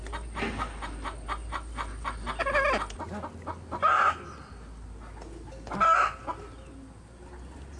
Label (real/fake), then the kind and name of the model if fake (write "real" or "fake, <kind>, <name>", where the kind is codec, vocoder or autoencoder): real